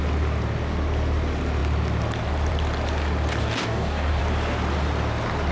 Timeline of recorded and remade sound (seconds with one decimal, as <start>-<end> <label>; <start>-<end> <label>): 0.0-3.4 recorded; 3.4-4.2 remade; 4.2-5.5 recorded